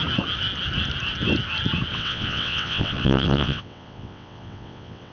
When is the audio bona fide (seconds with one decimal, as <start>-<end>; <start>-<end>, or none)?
0.0-1.9